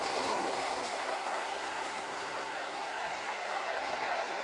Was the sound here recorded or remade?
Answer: remade